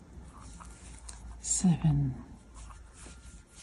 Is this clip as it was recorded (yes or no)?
yes